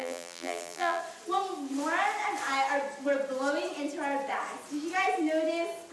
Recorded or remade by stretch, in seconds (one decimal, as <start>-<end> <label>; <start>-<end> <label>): 0.0-1.0 remade; 1.0-5.9 recorded